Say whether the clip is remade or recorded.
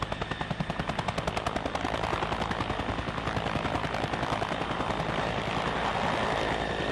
recorded